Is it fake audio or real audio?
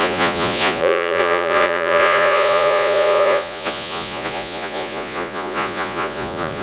fake